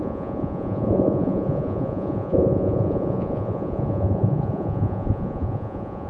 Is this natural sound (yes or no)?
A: no